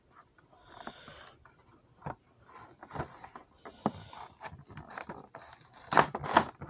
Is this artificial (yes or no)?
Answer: no